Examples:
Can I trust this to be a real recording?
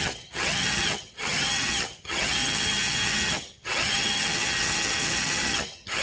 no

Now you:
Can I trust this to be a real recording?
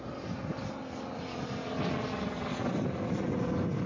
yes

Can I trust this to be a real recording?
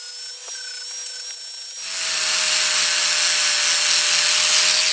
yes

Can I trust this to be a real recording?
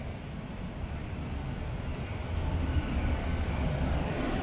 yes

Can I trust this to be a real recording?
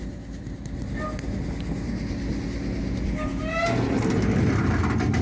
yes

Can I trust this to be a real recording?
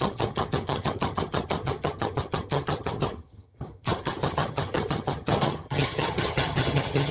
no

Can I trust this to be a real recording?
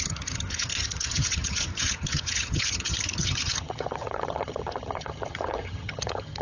no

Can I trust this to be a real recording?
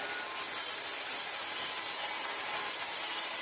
yes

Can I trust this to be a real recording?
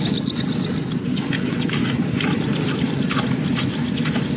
yes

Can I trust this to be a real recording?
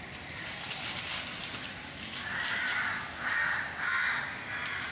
yes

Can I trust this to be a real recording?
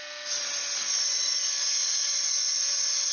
yes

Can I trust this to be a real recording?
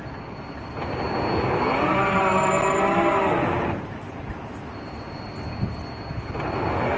yes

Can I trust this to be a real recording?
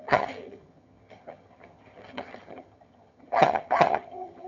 no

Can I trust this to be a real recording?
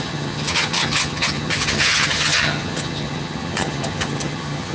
no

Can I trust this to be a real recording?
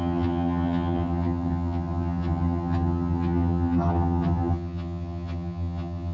no